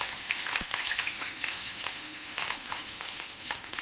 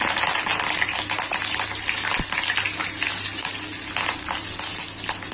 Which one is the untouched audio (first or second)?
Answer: second